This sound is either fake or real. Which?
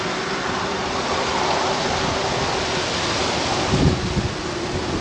real